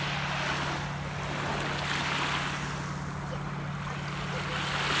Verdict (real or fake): real